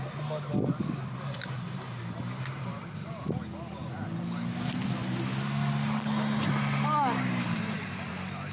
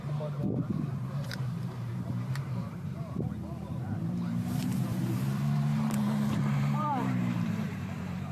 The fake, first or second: second